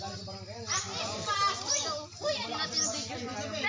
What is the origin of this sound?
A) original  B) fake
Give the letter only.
A